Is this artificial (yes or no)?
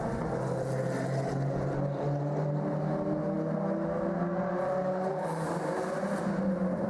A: no